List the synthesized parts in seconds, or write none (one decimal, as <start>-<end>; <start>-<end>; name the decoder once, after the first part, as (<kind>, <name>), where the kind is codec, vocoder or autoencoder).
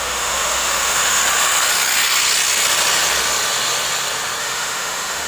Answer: 0.0-1.2 (autoencoder, DAC-VAE); 4.4-5.3